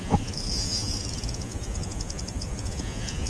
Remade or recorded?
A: remade